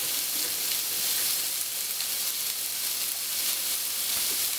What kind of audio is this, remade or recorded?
recorded